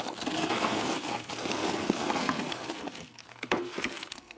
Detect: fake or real fake